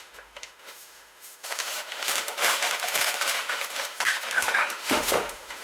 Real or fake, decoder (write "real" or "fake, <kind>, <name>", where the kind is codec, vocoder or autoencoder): fake, autoencoder, DAC-VAE